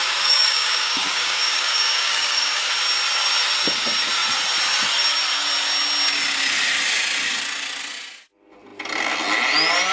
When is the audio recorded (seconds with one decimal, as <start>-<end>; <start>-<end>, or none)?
2.6-9.9